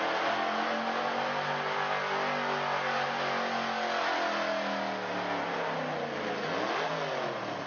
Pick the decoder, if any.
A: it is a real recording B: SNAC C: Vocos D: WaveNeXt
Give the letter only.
A